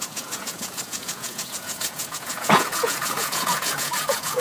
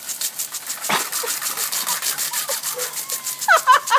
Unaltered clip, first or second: second